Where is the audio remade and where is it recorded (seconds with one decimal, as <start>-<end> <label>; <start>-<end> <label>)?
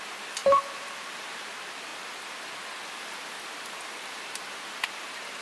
0.0-1.9 remade; 1.9-4.0 recorded; 4.0-5.4 remade